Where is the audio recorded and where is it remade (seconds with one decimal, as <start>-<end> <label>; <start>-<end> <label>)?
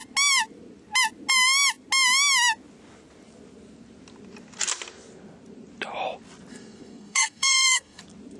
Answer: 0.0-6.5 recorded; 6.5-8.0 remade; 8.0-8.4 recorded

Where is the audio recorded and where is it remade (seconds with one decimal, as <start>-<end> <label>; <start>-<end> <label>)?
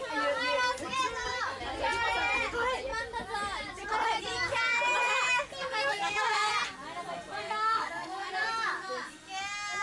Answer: 0.0-5.6 recorded; 5.6-6.5 remade; 6.5-7.4 recorded; 7.4-8.3 remade; 8.3-9.8 recorded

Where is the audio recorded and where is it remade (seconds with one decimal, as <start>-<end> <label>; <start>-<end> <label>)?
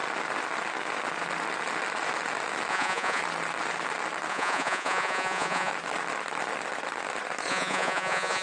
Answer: 0.0-2.7 recorded; 2.7-3.2 remade; 3.2-4.3 recorded; 4.3-5.7 remade; 5.7-7.5 recorded; 7.5-8.4 remade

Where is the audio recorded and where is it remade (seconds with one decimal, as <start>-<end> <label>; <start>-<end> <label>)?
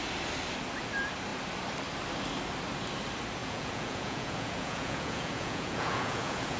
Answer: 0.0-3.4 recorded; 3.4-6.6 remade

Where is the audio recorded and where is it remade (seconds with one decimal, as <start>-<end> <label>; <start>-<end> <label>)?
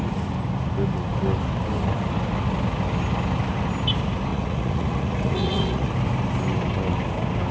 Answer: 0.0-4.3 recorded; 4.3-5.9 remade; 5.9-7.5 recorded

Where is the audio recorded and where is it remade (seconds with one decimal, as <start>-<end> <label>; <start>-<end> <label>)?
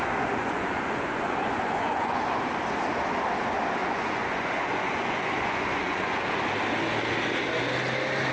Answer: 0.0-0.4 recorded; 0.4-2.2 remade; 2.2-3.8 recorded; 3.8-6.4 remade; 6.4-8.3 recorded